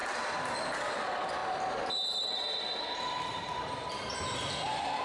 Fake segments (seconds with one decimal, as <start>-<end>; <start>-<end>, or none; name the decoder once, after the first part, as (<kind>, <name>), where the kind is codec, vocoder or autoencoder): none